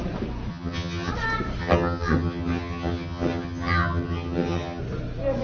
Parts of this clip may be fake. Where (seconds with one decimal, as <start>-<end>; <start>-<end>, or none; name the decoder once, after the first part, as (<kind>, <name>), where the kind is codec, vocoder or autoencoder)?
0.5-1.1 (vocoder, HiFi-GAN); 1.6-4.8